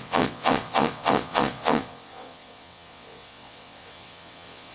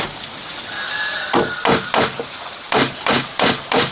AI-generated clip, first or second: first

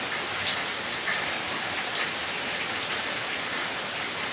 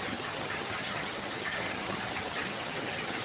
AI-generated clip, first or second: second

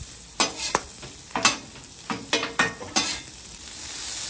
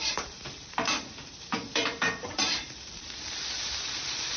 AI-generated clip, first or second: second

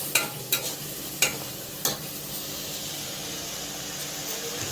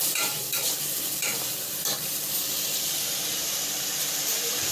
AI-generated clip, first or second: second